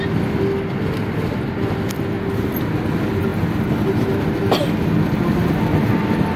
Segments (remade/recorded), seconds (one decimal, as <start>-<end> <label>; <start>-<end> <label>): 0.0-6.4 recorded